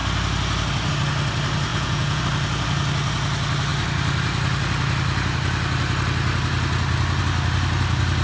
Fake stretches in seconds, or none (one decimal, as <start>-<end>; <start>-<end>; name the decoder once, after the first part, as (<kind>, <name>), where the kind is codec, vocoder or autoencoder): 1.7-2.2 (vocoder, Vocos)